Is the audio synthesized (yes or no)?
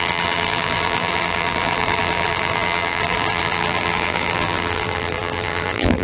yes